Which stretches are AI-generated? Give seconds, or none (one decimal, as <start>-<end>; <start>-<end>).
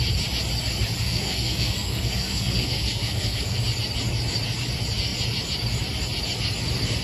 1.0-3.6